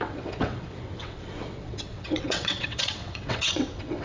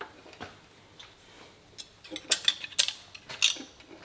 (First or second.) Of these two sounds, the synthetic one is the first